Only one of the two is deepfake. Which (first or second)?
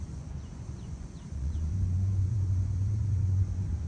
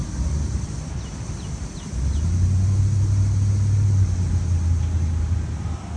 first